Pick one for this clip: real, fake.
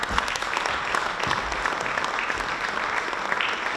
real